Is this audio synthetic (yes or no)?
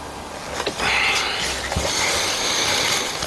no